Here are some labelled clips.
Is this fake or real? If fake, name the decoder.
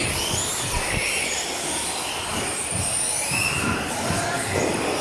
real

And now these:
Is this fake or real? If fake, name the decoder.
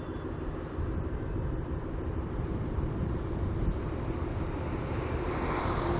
fake, vocoder, BigVGAN v2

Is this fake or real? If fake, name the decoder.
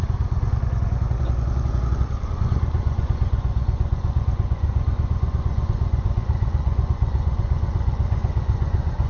fake, vocoder, Vocos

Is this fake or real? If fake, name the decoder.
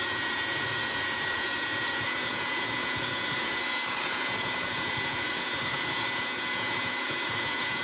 fake, vocoder, Vocos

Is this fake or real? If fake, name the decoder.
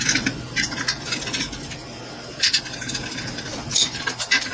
real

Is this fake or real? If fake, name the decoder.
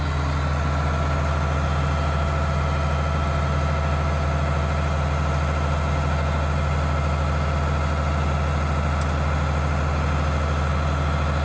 real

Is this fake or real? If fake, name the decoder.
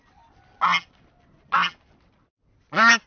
real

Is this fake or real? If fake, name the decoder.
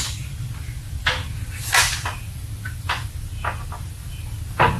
real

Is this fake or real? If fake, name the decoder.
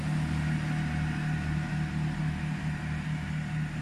real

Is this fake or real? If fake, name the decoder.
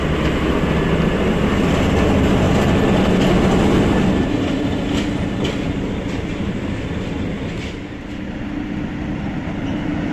real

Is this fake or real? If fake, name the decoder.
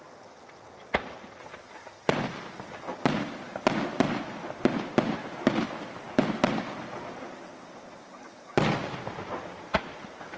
real